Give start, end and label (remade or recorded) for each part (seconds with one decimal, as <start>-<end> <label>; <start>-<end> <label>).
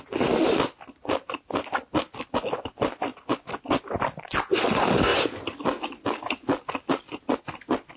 0.0-8.0 recorded